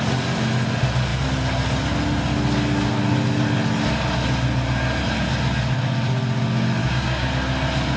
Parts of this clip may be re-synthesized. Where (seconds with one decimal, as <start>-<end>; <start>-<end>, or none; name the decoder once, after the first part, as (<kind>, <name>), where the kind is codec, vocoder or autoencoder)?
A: 6.8-7.3 (codec, DAC)